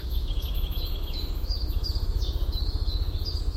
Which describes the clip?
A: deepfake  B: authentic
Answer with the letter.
A